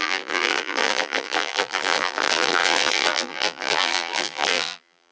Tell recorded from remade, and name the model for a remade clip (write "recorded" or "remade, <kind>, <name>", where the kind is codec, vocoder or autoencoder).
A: remade, vocoder, BigVGAN v2